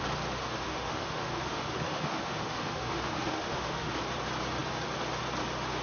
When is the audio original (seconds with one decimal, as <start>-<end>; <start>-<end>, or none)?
0.0-0.4; 3.9-5.8